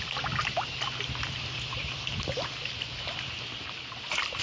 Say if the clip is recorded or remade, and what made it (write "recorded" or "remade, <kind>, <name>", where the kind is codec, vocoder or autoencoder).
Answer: recorded